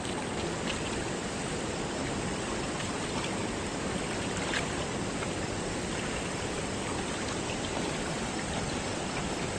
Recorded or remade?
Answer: remade